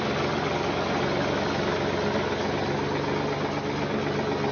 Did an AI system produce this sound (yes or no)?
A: no